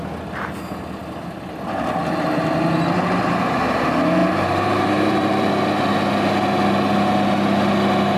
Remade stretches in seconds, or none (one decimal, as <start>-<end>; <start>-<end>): 4.2-5.5

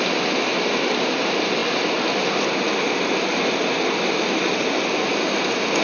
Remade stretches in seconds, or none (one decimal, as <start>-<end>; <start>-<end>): none